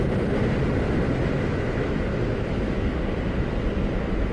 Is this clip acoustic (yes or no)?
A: yes